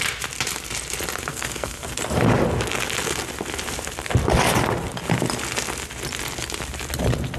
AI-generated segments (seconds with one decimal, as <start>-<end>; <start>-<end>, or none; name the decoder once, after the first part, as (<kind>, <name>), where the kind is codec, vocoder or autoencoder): 1.3-1.9 (codec, SNAC)